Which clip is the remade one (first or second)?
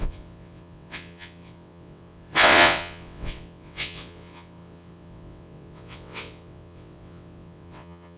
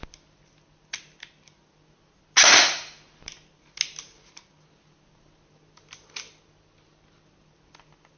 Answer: first